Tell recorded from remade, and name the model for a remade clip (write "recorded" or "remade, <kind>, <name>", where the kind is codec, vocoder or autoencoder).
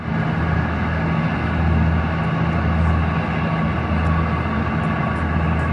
recorded